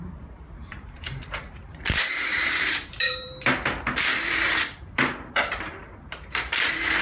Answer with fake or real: fake